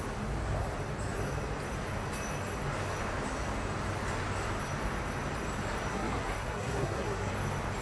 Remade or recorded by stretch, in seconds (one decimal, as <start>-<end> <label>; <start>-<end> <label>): 0.0-5.9 recorded; 5.9-7.3 remade; 7.3-7.8 recorded